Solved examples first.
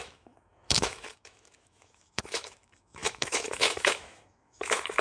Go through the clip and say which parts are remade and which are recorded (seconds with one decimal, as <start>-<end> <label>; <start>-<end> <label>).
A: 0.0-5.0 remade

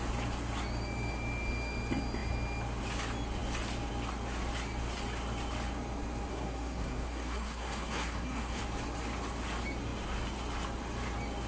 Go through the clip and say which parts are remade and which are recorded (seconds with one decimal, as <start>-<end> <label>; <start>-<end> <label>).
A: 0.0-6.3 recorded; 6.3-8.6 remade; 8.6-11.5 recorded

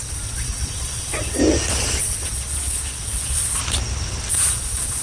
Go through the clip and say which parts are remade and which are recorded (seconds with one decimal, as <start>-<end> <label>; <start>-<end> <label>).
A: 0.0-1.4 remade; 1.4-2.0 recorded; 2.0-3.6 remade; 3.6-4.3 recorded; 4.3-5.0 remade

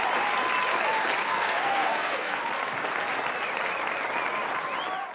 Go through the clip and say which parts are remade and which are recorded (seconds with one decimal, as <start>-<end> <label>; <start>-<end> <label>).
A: 0.0-1.2 recorded; 1.2-2.4 remade; 2.4-5.1 recorded

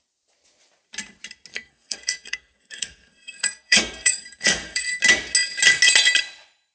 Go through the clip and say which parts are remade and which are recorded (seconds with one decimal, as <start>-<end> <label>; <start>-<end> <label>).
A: 0.0-1.5 recorded; 1.5-5.0 remade; 5.0-6.7 recorded

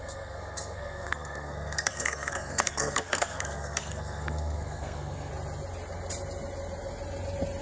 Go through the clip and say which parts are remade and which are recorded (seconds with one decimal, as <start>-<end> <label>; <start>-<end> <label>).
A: 0.0-5.3 remade; 5.3-7.6 recorded